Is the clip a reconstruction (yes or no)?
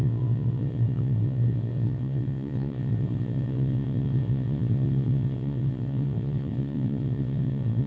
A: yes